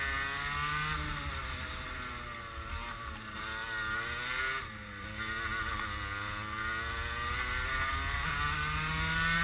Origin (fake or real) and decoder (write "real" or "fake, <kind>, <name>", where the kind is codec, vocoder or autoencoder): real